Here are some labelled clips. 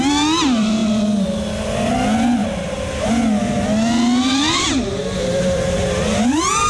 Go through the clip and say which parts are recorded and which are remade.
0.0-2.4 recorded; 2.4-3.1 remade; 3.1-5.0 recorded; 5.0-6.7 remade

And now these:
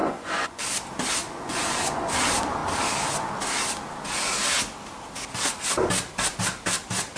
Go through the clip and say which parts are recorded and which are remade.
0.0-0.6 remade; 0.6-1.2 recorded; 1.2-2.1 remade; 2.1-7.2 recorded

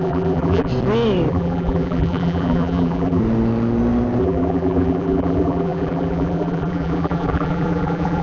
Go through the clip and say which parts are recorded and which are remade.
0.0-0.7 remade; 0.7-1.3 recorded; 1.3-3.2 remade; 3.2-4.2 recorded; 4.2-8.2 remade

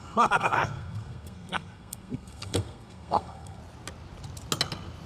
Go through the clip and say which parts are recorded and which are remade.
0.0-3.6 remade; 3.6-5.1 recorded

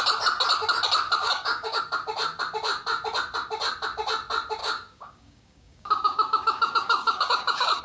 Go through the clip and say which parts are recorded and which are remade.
0.0-1.2 recorded; 1.2-1.8 remade; 1.8-4.6 recorded; 4.6-7.8 remade

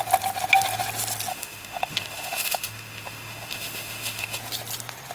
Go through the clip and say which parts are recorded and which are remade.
0.0-1.3 recorded; 1.3-4.4 remade; 4.4-5.1 recorded

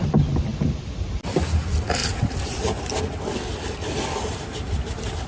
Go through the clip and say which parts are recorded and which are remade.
0.0-2.0 recorded; 2.0-2.8 remade; 2.8-5.3 recorded